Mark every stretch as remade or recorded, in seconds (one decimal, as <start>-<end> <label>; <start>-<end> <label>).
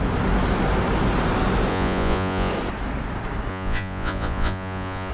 0.0-1.7 recorded; 1.7-2.5 remade; 2.5-3.5 recorded; 3.5-5.1 remade